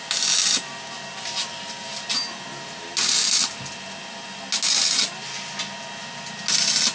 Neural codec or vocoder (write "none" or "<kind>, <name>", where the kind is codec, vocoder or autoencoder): none